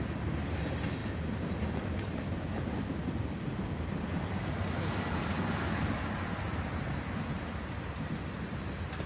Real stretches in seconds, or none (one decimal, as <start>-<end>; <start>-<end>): 0.0-9.1